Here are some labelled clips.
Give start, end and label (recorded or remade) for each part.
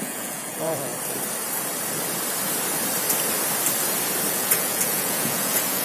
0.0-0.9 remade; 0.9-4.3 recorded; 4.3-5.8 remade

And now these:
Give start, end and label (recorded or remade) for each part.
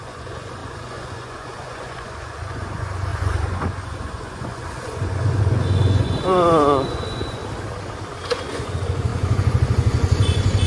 0.0-7.4 remade; 7.4-8.2 recorded; 8.2-10.7 remade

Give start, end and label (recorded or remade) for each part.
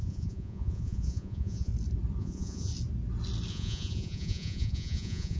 0.0-1.7 remade; 1.7-2.2 recorded; 2.2-2.7 remade; 2.7-3.5 recorded; 3.5-5.4 remade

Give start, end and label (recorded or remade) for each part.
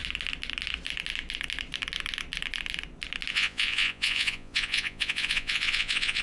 0.0-3.3 recorded; 3.3-6.2 remade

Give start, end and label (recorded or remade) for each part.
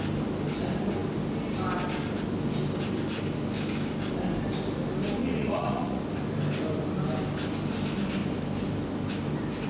0.0-5.2 recorded; 5.2-6.0 remade; 6.0-9.7 recorded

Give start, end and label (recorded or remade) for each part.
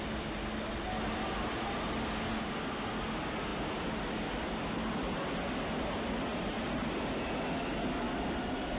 0.0-8.8 recorded